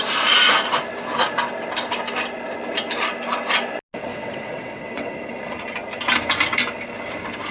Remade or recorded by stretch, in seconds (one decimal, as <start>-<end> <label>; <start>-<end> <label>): 0.0-4.1 recorded; 4.1-5.1 remade; 5.1-7.5 recorded